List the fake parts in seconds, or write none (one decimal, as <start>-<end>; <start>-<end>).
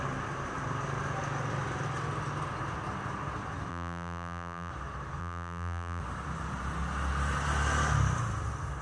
3.7-4.7; 5.2-6.0